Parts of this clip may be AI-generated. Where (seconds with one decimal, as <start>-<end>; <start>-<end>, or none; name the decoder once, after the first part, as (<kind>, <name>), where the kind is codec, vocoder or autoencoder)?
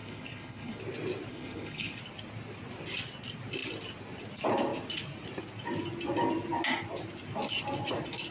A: 0.0-0.8 (codec, HILCodec); 1.3-2.0